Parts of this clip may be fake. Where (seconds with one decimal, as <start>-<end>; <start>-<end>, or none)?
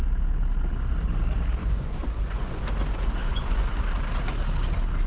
1.6-2.6; 3.2-3.8